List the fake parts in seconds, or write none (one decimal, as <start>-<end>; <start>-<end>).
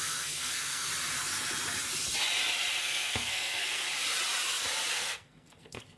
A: 0.0-0.9; 2.8-3.9; 4.9-6.0